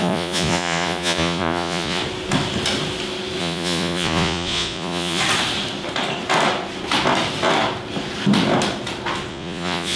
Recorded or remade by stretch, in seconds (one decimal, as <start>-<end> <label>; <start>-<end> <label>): 0.0-2.0 remade; 2.0-3.4 recorded; 3.4-5.2 remade; 5.2-9.3 recorded; 9.3-10.0 remade